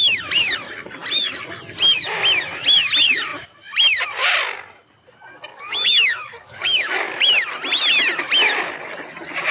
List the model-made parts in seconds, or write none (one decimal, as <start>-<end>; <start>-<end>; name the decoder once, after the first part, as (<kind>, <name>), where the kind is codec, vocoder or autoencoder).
5.5-7.2 (codec, DAC)